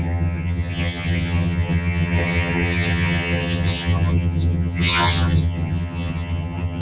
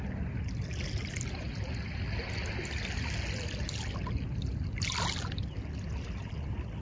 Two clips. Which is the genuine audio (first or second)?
second